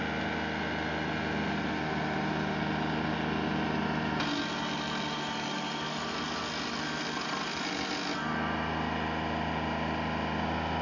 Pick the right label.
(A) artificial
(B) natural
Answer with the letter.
B